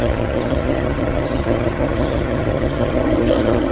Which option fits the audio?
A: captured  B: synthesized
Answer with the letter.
B